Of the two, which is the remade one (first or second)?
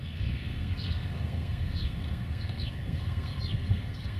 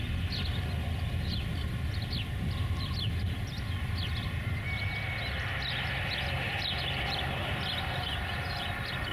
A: first